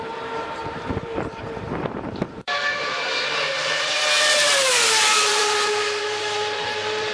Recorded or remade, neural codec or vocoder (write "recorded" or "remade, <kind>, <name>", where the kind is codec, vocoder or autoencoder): remade, vocoder, BigVGAN v2